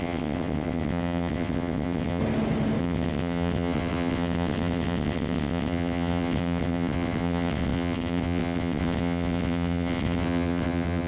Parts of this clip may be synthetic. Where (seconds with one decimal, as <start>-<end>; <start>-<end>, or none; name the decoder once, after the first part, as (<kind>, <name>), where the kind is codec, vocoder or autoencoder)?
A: 0.0-2.2 (vocoder, WaveNeXt); 2.8-11.1